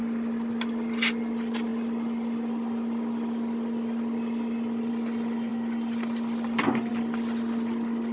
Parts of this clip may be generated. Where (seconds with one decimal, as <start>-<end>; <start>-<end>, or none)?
none